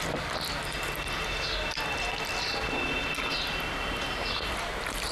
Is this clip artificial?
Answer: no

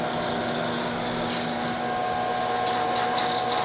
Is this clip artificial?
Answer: no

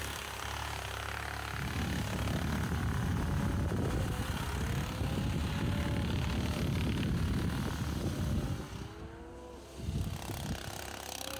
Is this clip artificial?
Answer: no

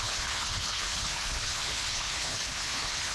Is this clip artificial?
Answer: yes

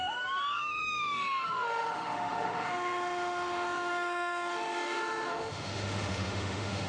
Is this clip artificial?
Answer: yes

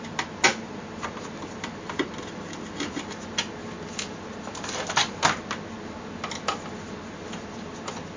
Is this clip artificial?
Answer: no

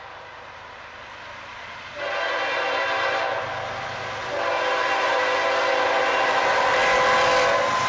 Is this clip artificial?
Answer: no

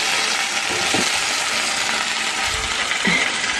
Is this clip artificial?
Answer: no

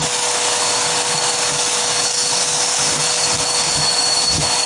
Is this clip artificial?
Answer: yes